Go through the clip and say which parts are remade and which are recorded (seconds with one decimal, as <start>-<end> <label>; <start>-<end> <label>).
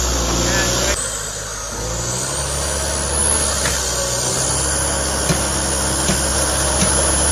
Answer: 0.0-6.3 recorded; 6.3-7.3 remade